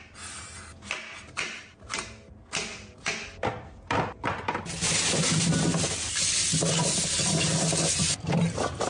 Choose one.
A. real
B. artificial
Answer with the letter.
A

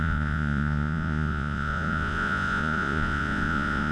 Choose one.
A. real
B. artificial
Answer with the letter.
B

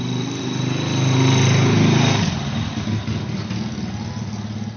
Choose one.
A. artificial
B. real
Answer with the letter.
B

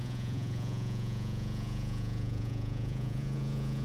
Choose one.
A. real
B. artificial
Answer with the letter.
B